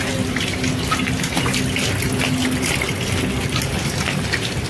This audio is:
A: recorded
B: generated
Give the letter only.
A